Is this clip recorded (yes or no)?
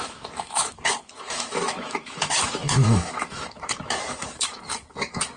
no